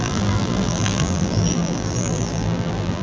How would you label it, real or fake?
fake